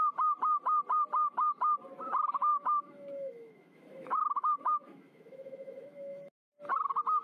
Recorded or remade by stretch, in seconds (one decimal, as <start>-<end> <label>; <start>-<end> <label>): 0.0-2.5 recorded; 2.5-6.4 remade; 6.4-7.2 recorded